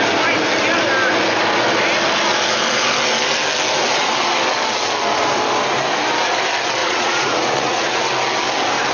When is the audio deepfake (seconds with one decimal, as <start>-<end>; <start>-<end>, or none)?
6.8-8.0